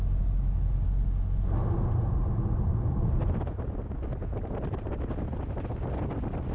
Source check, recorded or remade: recorded